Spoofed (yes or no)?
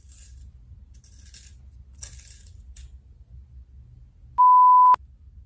no